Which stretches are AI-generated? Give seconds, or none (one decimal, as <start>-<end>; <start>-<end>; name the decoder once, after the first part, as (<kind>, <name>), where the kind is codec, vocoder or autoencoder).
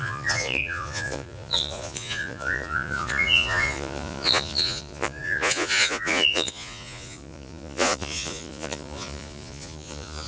0.0-10.3 (vocoder, Vocos)